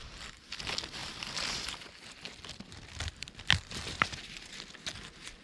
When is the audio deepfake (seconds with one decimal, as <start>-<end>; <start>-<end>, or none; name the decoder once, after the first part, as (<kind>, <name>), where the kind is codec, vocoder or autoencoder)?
1.0-4.2 (vocoder, BigVGAN v2)